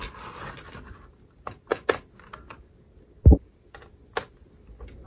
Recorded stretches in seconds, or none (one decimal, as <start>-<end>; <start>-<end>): 0.0-5.1